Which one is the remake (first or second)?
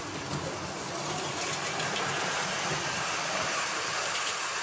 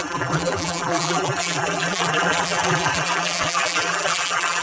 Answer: second